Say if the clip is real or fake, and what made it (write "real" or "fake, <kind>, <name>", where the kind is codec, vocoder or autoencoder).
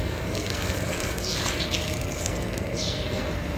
fake, codec, SNAC